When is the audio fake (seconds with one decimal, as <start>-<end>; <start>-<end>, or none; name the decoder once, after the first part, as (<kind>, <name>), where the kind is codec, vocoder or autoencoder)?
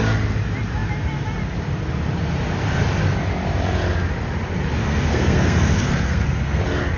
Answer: 4.8-6.6 (codec, SNAC)